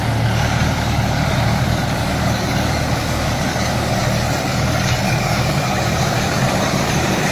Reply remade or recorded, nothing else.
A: remade